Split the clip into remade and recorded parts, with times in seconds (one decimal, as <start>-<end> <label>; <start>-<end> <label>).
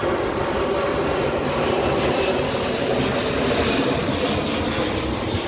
0.0-0.9 recorded; 0.9-4.2 remade; 4.2-5.5 recorded